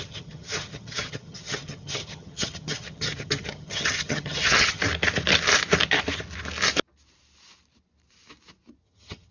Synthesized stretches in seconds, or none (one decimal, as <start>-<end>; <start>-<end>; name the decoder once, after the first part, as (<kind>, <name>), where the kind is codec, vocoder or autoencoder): 0.0-4.8 (vocoder, HiFi-GAN); 8.8-9.3